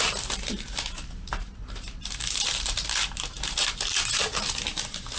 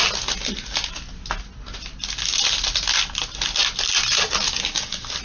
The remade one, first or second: first